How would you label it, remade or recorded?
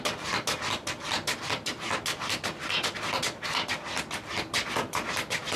recorded